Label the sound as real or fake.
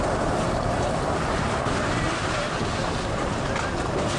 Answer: fake